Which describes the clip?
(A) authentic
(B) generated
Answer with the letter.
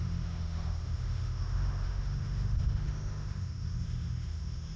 B